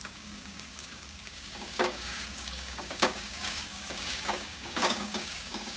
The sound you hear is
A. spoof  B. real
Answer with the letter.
A